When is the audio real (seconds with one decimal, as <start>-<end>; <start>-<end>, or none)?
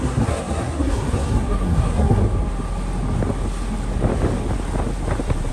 2.2-5.5